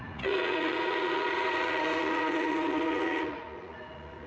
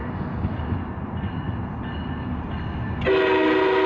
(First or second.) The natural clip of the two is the second